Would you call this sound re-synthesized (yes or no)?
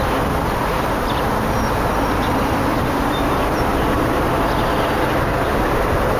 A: no